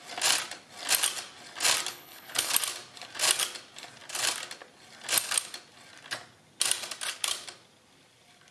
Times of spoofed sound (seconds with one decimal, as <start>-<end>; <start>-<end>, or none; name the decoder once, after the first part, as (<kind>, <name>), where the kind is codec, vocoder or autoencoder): 1.9-2.5 (codec, HILCodec)